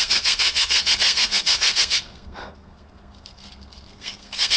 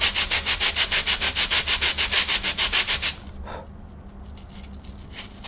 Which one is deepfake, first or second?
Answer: first